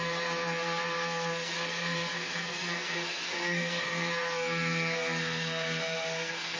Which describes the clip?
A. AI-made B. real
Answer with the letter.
A